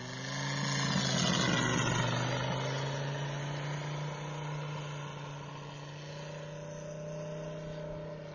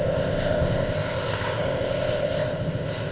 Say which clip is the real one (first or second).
first